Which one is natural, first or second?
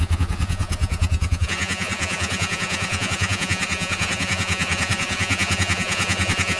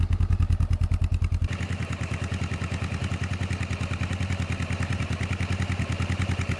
second